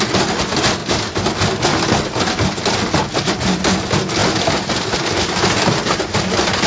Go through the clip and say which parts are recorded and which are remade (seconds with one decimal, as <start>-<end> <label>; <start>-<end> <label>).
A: 0.0-6.7 recorded